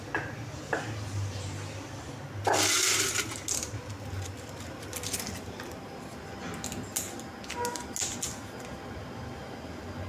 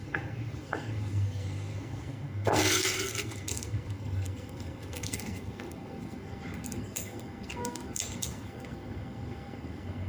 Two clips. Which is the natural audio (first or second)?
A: first